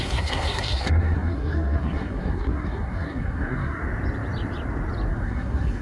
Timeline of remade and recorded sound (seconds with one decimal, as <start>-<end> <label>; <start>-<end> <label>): 0.0-3.8 remade; 3.8-5.1 recorded; 5.1-5.8 remade